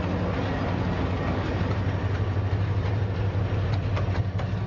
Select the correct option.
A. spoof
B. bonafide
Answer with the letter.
B